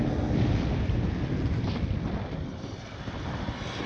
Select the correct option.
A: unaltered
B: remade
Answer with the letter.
A